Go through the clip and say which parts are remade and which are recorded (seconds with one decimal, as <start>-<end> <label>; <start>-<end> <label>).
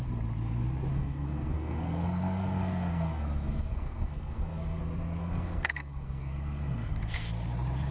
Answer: 0.0-0.9 recorded; 0.9-4.8 remade; 4.8-5.2 recorded; 5.2-7.3 remade; 7.3-7.9 recorded